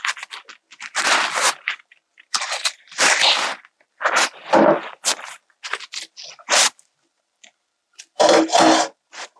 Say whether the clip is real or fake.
real